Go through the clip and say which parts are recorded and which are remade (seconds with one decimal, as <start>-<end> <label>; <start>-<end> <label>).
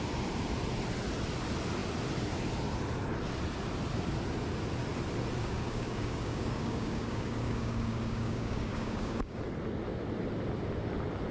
0.0-5.4 recorded; 5.4-9.4 remade; 9.4-11.3 recorded